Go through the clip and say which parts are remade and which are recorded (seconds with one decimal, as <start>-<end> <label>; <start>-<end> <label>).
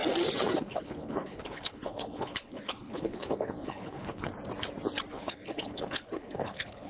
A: 0.0-0.7 recorded; 0.7-4.3 remade; 4.3-5.1 recorded; 5.1-6.9 remade